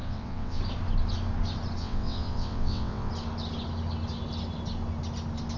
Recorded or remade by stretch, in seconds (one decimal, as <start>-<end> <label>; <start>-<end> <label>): 0.0-0.6 remade; 0.6-1.8 recorded; 1.8-3.1 remade; 3.1-5.6 recorded